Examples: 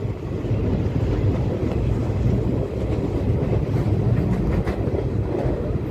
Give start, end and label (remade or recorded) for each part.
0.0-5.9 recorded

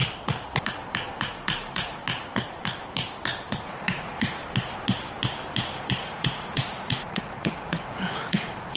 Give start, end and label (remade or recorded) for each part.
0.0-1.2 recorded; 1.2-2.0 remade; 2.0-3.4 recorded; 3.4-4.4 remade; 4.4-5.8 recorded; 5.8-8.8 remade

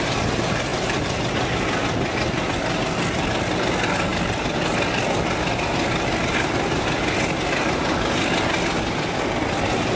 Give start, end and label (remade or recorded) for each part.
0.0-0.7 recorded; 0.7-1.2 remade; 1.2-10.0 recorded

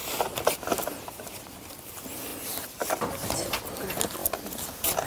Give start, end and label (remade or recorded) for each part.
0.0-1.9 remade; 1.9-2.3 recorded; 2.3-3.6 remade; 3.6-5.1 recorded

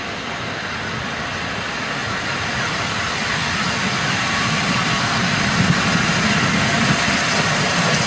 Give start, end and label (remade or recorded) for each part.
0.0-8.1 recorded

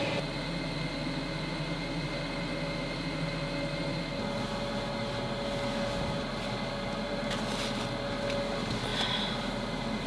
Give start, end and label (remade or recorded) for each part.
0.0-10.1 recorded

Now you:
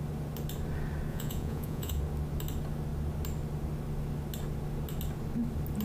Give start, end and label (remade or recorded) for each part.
0.0-1.1 recorded; 1.1-2.0 remade; 2.0-5.8 recorded